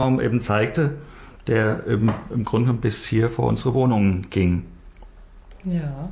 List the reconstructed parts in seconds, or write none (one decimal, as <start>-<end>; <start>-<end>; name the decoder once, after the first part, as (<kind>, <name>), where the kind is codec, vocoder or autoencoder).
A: none

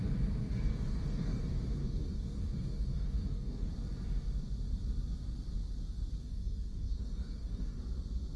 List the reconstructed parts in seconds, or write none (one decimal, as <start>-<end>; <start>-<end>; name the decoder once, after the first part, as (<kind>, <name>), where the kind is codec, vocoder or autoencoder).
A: 0.7-1.4 (codec, DAC); 1.8-3.7; 6.2-7.8

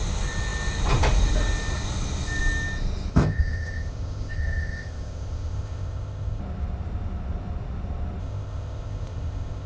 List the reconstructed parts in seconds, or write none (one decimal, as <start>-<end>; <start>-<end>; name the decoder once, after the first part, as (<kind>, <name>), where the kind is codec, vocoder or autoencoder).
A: 3.1-6.4 (codec, ZipCodec); 8.2-9.7

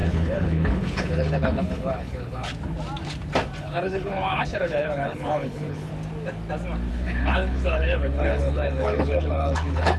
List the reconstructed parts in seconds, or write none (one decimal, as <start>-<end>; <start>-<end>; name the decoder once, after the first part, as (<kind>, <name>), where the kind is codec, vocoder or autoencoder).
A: 0.0-2.5 (codec, HILCodec); 3.6-5.9; 6.9-10.0